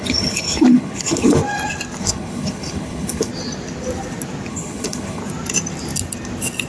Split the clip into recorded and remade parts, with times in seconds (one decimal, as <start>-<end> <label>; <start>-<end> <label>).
0.0-1.4 remade; 1.4-2.0 recorded; 2.0-3.3 remade; 3.3-4.5 recorded; 4.5-5.2 remade; 5.2-6.7 recorded